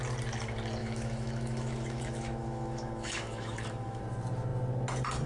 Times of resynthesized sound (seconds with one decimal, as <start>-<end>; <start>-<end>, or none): 0.8-4.0